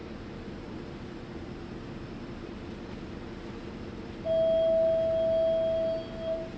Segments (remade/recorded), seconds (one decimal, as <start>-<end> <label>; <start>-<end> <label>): 0.0-6.6 recorded